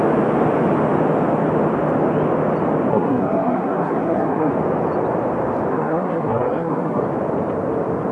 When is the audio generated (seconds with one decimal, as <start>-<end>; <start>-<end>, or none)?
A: 2.9-4.5; 5.7-7.0